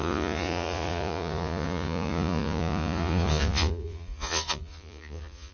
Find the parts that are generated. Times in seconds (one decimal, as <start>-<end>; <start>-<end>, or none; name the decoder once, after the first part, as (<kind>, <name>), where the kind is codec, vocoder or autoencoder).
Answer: 0.0-5.5 (vocoder, Vocos)